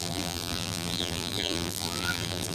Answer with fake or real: fake